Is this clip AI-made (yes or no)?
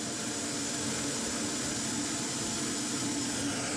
no